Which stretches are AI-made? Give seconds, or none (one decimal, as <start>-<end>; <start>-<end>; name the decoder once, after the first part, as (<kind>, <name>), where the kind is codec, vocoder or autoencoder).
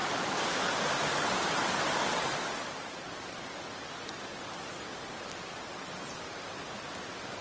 none